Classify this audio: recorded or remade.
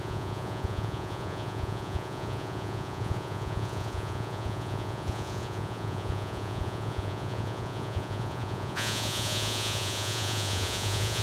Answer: remade